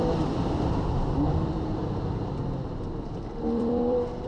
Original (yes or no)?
no